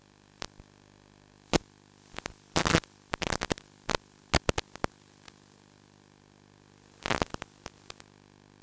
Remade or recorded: recorded